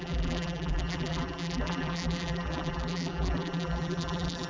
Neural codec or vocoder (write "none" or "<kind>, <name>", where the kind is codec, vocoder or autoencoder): vocoder, BigVGAN v2